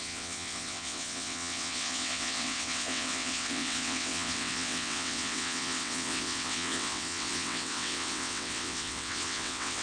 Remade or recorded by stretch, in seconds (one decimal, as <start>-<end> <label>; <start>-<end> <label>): 0.0-9.8 remade